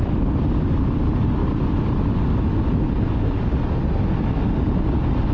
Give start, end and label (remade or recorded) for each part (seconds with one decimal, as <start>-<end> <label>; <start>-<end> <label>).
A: 0.0-5.3 recorded